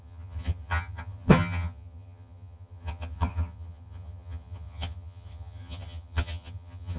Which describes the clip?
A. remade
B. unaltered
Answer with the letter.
A